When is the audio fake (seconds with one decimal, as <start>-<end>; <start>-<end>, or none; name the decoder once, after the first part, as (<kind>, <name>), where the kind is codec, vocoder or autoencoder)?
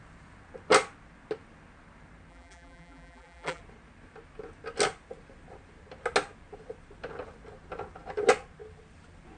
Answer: 2.3-3.6 (vocoder, BigVGAN v2)